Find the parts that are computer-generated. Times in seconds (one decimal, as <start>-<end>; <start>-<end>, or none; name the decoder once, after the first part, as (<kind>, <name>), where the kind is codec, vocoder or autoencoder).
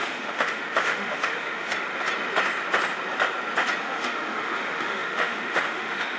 0.0-1.7 (autoencoder, DAC-VAE); 3.8-6.2